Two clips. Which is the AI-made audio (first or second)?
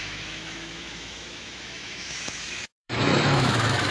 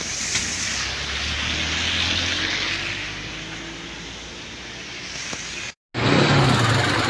first